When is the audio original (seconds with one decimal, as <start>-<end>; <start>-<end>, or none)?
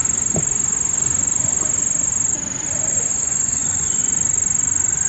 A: 0.0-2.9; 4.0-5.1